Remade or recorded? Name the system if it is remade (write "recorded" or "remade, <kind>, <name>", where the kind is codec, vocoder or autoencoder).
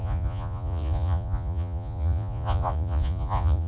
remade, vocoder, Vocos